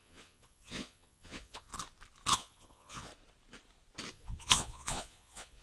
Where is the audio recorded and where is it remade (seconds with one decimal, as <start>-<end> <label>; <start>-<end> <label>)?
0.0-1.7 remade; 1.7-2.3 recorded; 2.3-3.1 remade; 3.1-4.1 recorded; 4.1-5.6 remade